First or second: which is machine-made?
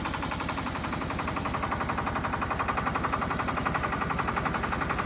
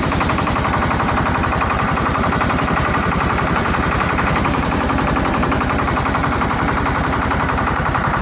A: second